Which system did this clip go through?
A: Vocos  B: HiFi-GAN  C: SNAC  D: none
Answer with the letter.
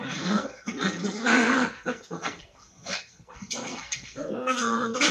C